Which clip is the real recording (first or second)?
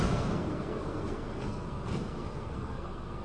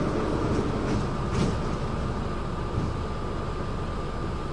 second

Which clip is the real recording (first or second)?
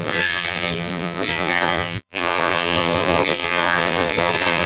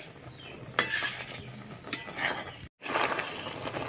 second